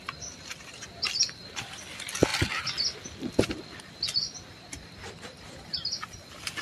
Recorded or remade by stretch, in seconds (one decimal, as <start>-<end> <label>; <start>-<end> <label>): 0.0-6.6 recorded